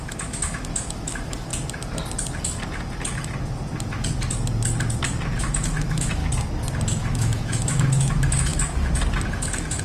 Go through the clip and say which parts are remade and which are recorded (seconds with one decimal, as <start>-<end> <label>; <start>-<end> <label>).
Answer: 0.0-1.5 remade; 1.5-5.4 recorded; 5.4-6.2 remade; 6.2-7.0 recorded; 7.0-8.5 remade; 8.5-9.3 recorded; 9.3-9.8 remade